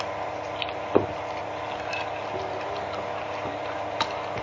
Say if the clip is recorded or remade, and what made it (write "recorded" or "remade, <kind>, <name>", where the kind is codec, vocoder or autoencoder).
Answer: recorded